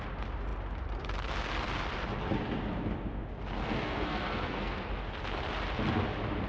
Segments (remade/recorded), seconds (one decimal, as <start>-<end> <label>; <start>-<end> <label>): 0.0-3.6 recorded; 3.6-4.9 remade; 4.9-6.5 recorded

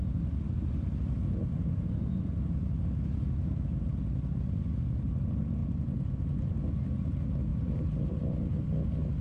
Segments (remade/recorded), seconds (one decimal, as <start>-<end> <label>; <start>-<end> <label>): 0.0-7.5 recorded; 7.5-8.1 remade; 8.1-9.2 recorded